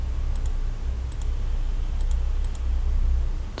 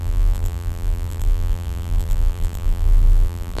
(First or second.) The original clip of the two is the first